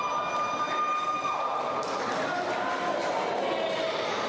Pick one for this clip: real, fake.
real